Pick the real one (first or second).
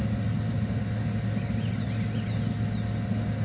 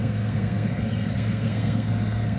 first